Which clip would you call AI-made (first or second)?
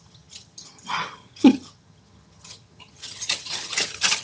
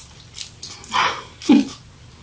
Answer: first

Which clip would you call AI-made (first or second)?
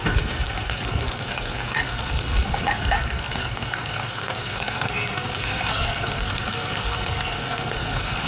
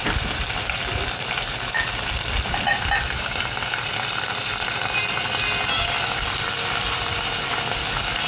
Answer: first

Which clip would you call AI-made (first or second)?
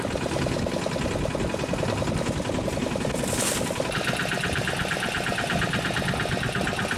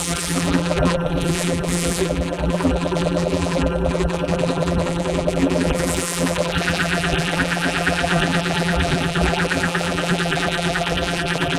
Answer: second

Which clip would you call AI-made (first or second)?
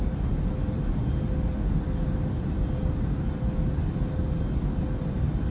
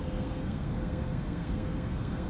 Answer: second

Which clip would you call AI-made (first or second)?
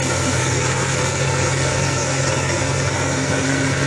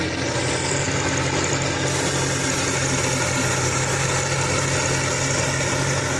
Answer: first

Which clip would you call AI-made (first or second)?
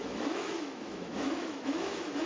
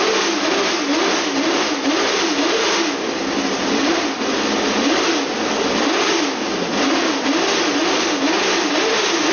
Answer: first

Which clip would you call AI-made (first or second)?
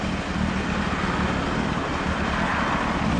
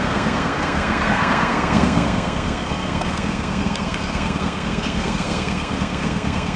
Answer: second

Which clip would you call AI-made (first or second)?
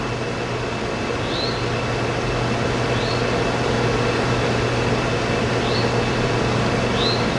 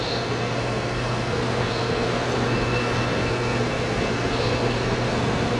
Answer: second